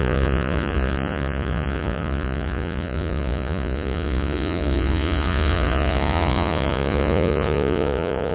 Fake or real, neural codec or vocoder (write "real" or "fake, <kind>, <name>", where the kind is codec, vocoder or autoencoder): fake, vocoder, Vocos